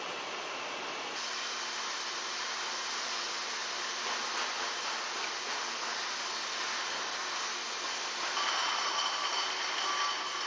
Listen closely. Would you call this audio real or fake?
real